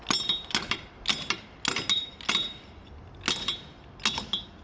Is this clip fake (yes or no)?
no